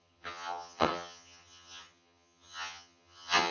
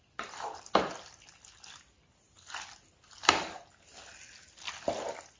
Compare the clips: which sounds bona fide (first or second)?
second